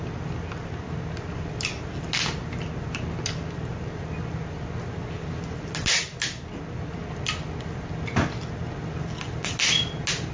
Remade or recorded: recorded